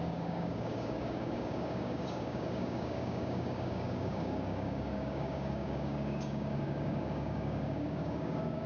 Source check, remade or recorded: remade